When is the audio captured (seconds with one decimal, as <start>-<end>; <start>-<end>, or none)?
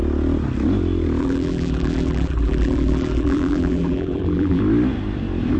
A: 0.0-1.2; 4.6-5.6